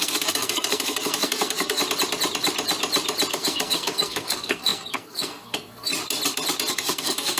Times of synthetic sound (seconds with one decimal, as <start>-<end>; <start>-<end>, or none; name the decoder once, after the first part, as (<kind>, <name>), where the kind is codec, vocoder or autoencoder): 0.0-1.8 (codec, SNAC); 3.3-5.9; 6.7-7.4